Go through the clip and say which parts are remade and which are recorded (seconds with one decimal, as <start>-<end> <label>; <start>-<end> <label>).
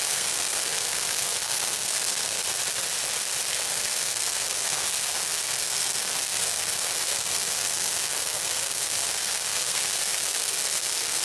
0.0-2.4 remade; 2.4-3.5 recorded; 3.5-11.2 remade